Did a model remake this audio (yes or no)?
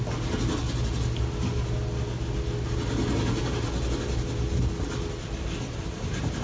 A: no